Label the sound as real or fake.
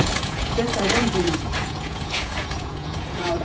fake